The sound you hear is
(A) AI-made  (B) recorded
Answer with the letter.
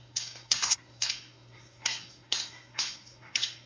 A